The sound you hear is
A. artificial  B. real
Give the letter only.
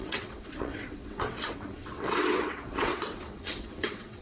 A